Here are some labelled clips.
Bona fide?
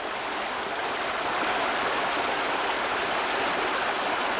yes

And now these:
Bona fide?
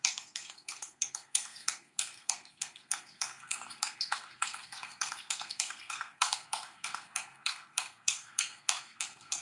no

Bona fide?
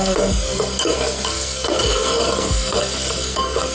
no